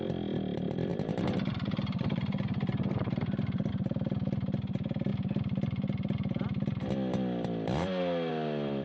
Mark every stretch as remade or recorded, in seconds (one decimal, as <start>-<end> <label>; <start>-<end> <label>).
0.0-0.9 recorded; 0.9-3.7 remade; 3.7-8.8 recorded